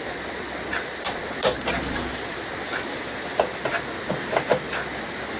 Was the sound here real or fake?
real